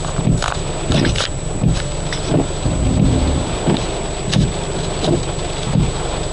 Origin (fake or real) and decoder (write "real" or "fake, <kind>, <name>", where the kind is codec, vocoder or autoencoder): real